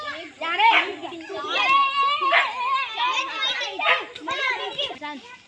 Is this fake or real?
real